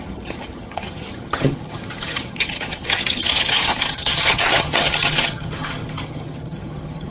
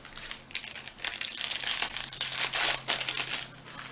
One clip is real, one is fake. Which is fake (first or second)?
first